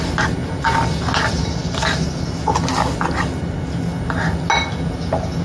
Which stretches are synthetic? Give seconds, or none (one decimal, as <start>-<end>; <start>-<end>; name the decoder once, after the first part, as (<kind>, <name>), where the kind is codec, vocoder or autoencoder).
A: none